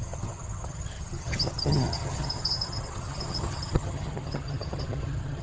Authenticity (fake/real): fake